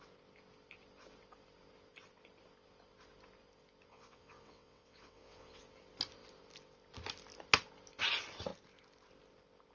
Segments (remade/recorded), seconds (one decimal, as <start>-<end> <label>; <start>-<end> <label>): 0.0-3.9 recorded; 3.9-5.6 remade; 5.6-9.7 recorded